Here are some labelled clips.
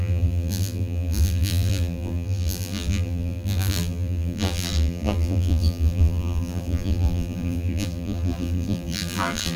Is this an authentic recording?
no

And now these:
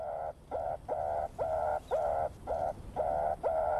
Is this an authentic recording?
yes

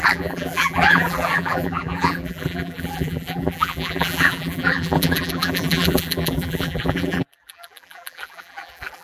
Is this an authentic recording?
no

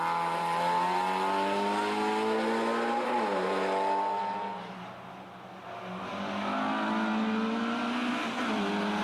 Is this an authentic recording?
yes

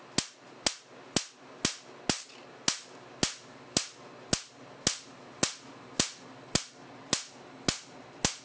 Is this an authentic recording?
yes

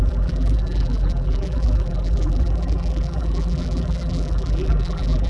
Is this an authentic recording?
no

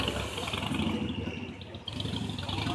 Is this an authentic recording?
yes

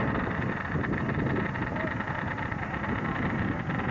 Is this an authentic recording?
yes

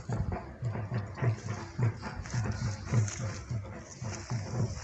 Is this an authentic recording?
yes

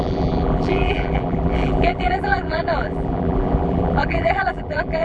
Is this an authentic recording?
no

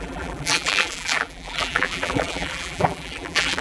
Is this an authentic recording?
no